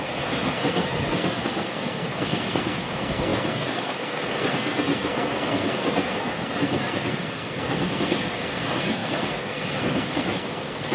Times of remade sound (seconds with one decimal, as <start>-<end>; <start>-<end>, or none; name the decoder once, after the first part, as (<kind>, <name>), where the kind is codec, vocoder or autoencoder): 0.0-10.9 (codec, SNAC)